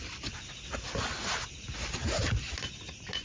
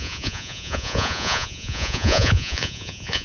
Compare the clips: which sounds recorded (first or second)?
first